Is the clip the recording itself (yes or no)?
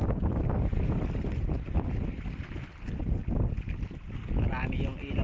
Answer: yes